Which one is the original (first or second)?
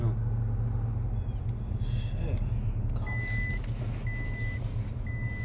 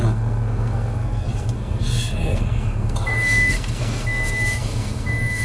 first